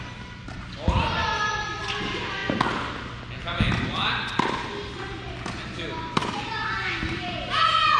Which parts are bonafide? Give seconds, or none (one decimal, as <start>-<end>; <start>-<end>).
0.0-8.0